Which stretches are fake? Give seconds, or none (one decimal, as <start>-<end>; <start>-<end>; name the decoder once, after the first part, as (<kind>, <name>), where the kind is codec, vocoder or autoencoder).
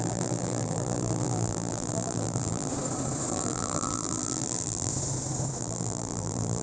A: 0.0-2.7 (vocoder, BigVGAN v2); 3.3-4.9; 5.6-6.6